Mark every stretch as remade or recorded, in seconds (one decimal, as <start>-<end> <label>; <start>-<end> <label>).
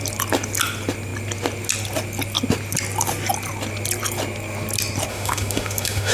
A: 0.0-5.1 recorded; 5.1-6.1 remade